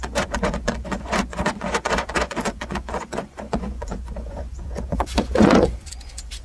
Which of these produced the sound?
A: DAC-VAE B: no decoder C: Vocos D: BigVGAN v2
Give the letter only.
C